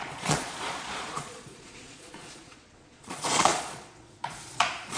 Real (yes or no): no